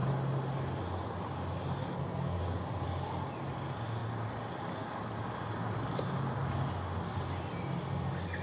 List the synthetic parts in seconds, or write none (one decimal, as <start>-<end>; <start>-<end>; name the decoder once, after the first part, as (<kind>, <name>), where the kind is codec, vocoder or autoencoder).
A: 1.8-2.4 (codec, SNAC)